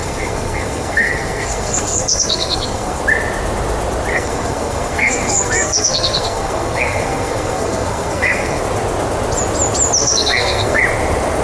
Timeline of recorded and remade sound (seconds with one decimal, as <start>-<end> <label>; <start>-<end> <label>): 0.0-3.0 remade; 3.0-4.1 recorded; 4.1-8.6 remade; 8.6-10.0 recorded; 10.0-10.8 remade; 10.8-11.4 recorded